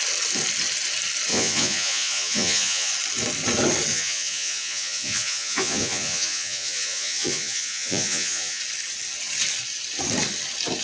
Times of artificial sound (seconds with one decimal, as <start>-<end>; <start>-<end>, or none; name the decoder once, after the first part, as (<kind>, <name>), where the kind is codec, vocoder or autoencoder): 1.3-2.9 (vocoder, Vocos); 3.9-8.6